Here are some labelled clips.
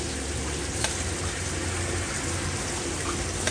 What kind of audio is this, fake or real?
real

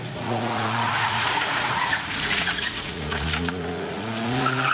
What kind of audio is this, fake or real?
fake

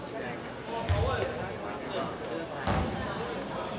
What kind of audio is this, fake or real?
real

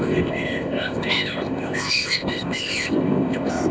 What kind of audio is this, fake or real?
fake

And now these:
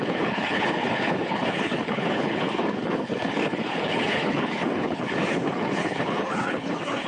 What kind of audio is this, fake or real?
fake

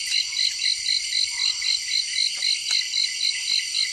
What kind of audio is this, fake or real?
real